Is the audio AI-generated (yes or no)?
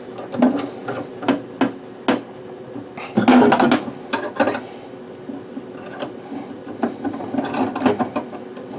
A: no